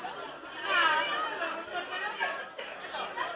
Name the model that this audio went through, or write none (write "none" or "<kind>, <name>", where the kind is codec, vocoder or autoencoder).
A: none